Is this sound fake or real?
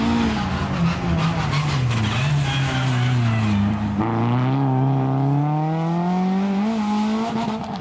real